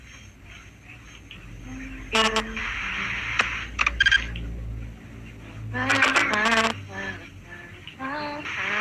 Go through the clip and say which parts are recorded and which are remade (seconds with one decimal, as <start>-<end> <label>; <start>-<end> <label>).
0.0-2.6 remade; 2.6-7.2 recorded; 7.2-7.9 remade; 7.9-8.4 recorded; 8.4-8.8 remade